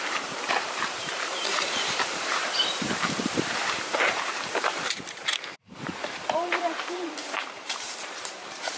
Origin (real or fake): fake